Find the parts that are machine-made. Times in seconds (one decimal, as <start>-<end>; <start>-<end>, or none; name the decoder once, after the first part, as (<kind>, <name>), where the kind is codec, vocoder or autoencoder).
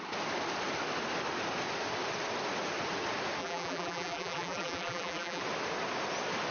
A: 3.4-5.4 (vocoder, BigVGAN v2)